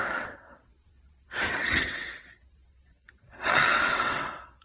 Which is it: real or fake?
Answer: fake